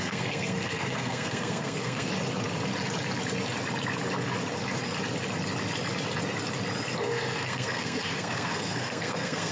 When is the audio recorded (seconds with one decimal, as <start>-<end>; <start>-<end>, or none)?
2.1-7.0